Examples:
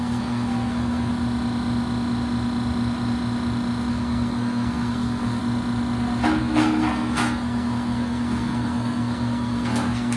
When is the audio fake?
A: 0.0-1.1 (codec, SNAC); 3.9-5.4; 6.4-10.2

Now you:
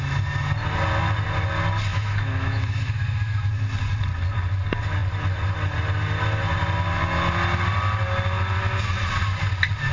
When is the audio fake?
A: 1.9-3.5 (autoencoder, DAC-VAE)

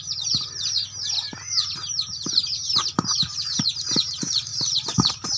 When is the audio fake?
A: 4.5-5.4 (vocoder, BigVGAN v2)

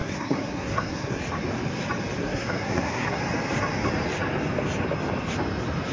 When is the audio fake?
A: 0.0-1.2 (codec, SNAC); 2.2-3.2

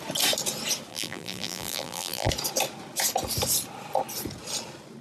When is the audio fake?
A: 0.9-2.3 (vocoder, BigVGAN v2)

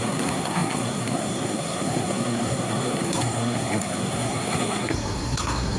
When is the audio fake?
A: 0.0-5.8 (codec, SNAC)